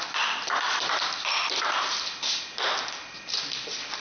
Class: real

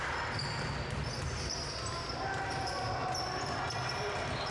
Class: real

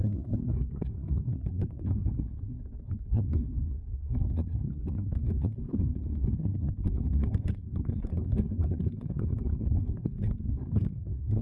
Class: fake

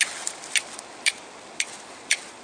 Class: real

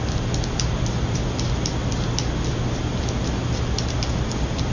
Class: real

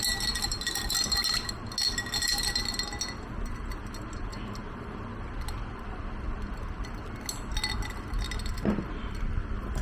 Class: real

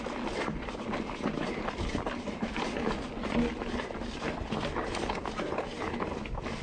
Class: real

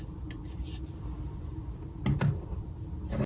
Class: real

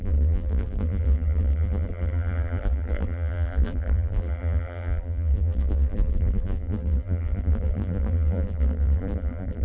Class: fake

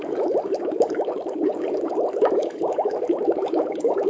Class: fake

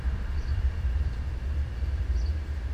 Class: fake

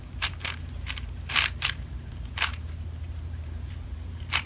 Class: fake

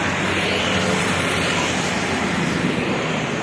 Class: real